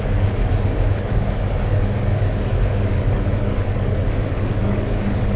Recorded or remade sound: remade